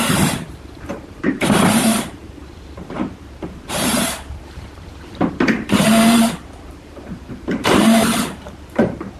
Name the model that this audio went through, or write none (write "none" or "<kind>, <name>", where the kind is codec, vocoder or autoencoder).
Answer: vocoder, BigVGAN v2